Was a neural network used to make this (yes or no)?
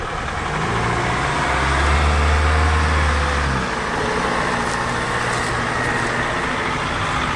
no